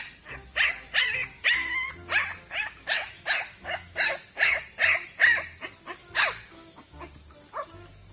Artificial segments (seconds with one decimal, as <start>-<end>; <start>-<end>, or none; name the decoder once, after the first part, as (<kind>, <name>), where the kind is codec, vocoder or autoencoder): 1.3-1.9 (autoencoder, DAC-VAE); 2.6-4.6; 6.0-7.0